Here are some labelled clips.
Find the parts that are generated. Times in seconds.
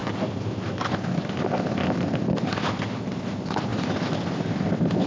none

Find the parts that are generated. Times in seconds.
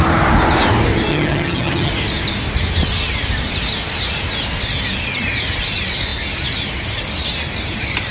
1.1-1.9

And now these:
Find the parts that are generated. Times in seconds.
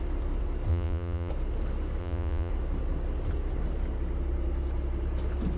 0.7-1.3; 2.0-2.5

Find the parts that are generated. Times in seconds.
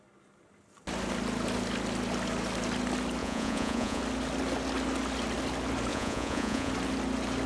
3.2-4.0; 5.9-6.7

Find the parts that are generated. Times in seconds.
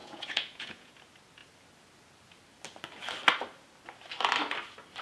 0.0-0.9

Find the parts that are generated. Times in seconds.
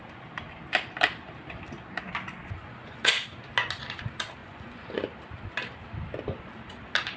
2.6-3.1; 4.4-5.0